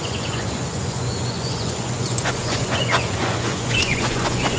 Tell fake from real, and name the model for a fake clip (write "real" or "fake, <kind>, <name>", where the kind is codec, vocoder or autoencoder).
fake, vocoder, Vocos